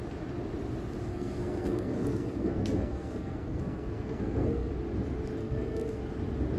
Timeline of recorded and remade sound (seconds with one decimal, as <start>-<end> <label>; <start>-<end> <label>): 0.0-1.1 recorded; 1.1-4.7 remade; 4.7-5.4 recorded; 5.4-6.0 remade; 6.0-6.6 recorded